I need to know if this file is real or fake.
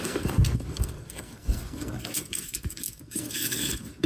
fake